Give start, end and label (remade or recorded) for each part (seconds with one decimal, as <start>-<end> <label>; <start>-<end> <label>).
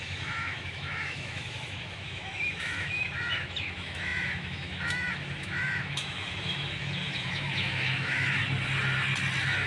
0.0-8.4 remade; 8.4-9.7 recorded